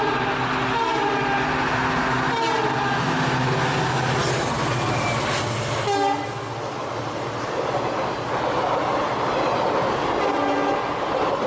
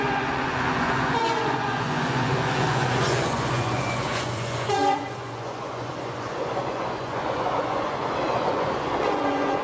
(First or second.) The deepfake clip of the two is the second